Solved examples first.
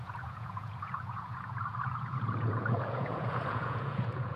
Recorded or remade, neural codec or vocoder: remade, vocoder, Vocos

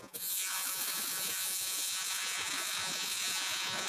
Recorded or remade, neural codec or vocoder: remade, vocoder, Vocos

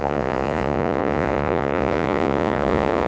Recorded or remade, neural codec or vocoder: remade, vocoder, Vocos